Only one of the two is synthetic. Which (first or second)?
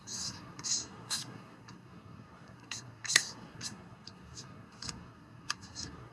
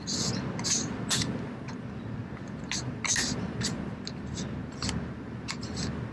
first